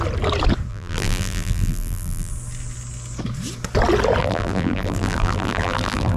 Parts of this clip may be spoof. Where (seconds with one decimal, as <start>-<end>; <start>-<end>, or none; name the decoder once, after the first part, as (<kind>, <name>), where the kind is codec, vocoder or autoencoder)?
0.7-2.3 (vocoder, BigVGAN v2); 4.2-6.2